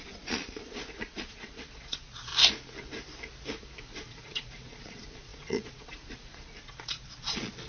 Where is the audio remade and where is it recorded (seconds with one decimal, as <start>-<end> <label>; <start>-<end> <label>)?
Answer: 0.0-2.3 remade; 2.3-3.8 recorded; 3.8-7.7 remade